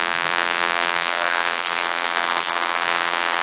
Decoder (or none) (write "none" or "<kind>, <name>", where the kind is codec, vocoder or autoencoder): vocoder, BigVGAN v2